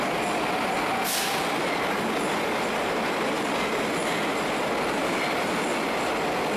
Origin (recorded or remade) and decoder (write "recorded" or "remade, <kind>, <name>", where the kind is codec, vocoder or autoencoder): recorded